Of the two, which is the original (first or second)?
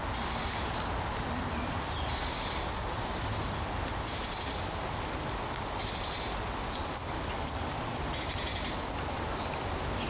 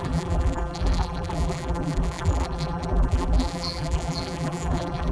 first